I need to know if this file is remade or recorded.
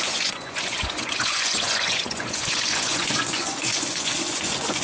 remade